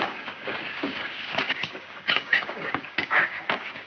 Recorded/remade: remade